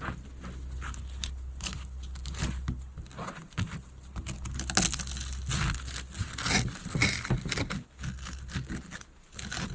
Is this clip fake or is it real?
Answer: real